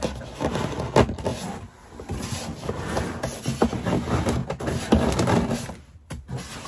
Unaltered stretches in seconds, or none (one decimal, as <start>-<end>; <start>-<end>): 0.0-1.3; 2.9-6.7